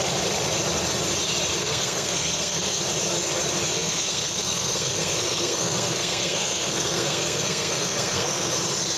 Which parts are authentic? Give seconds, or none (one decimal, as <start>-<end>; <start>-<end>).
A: 0.0-1.6; 2.8-3.8; 8.5-9.0